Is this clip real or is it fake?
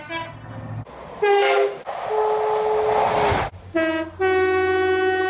real